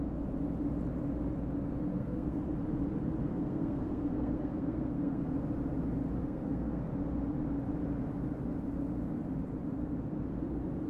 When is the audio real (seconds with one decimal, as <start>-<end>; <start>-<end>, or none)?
0.0-1.9; 2.4-3.3; 5.2-6.2; 6.9-10.9